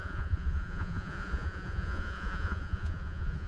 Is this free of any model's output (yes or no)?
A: no